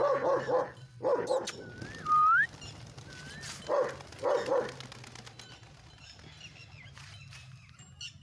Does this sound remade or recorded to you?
recorded